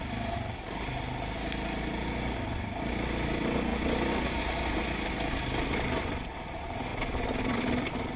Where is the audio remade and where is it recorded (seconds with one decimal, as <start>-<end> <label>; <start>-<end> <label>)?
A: 0.0-8.2 recorded

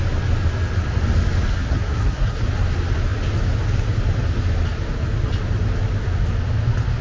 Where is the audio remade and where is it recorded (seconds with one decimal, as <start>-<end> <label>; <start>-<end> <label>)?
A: 0.0-1.5 recorded; 1.5-2.4 remade; 2.4-7.0 recorded

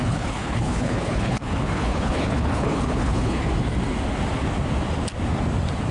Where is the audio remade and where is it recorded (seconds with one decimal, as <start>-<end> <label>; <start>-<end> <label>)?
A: 0.0-3.5 remade; 3.5-5.9 recorded